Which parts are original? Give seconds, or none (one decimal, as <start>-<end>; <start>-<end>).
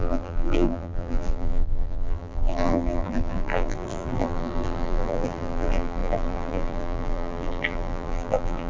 none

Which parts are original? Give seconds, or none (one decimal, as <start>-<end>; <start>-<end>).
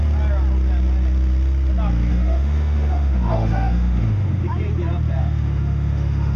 0.0-2.1; 4.4-5.2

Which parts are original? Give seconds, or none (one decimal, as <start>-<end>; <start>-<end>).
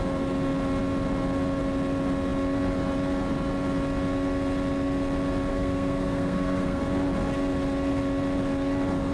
0.0-5.5; 6.8-9.1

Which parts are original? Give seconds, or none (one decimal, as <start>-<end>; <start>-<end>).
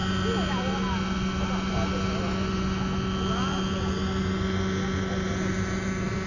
0.0-6.3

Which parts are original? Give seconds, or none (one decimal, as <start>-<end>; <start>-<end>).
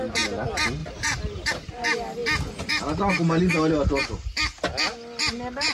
0.0-5.7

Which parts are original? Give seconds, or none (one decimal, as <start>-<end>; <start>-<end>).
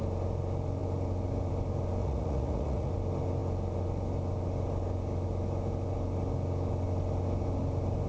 0.0-2.0; 2.9-8.1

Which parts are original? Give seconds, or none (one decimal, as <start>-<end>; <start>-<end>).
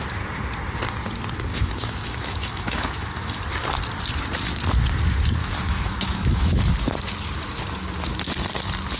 0.0-1.5; 3.4-5.4; 6.6-9.0